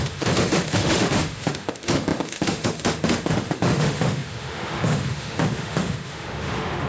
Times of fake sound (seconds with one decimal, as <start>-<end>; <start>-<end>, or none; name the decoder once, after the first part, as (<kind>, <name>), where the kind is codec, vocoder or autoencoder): 0.0-6.9 (autoencoder, DAC-VAE)